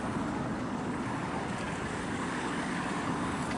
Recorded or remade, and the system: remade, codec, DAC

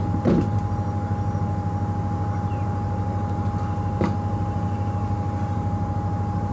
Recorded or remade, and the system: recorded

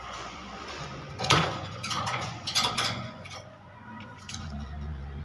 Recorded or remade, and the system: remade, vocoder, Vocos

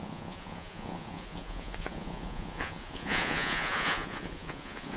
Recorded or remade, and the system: remade, vocoder, Vocos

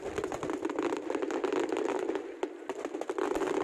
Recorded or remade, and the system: recorded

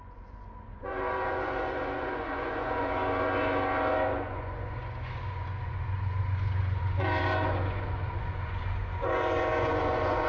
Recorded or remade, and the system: remade, vocoder, Vocos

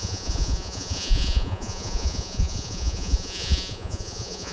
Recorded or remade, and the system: remade, vocoder, Vocos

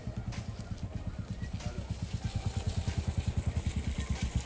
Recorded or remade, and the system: recorded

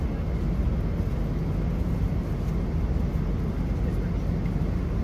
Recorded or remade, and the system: recorded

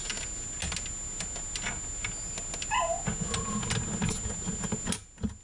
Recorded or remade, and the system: recorded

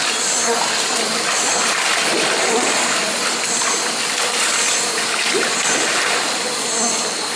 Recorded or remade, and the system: recorded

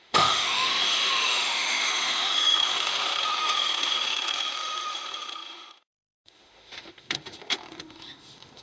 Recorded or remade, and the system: remade, autoencoder, DAC-VAE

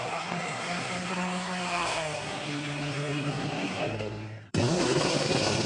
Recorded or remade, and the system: remade, codec, SNAC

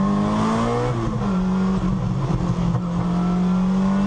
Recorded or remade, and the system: recorded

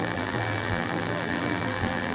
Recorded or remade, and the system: remade, vocoder, BigVGAN v2